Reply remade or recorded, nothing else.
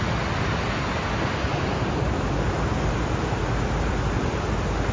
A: recorded